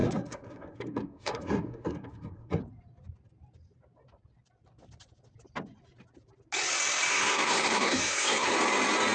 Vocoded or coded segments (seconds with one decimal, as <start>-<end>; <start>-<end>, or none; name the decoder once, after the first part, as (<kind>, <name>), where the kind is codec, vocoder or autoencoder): 0.0-2.6 (codec, SNAC); 7.1-8.5